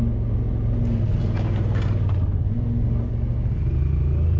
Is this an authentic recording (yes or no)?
yes